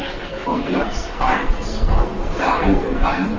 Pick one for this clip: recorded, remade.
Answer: remade